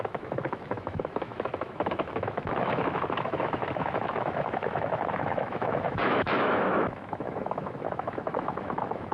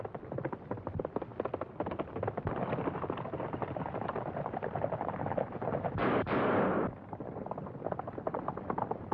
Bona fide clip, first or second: second